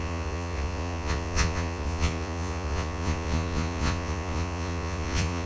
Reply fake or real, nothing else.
fake